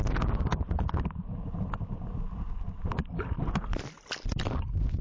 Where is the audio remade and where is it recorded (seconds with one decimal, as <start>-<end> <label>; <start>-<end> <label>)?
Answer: 0.0-5.0 recorded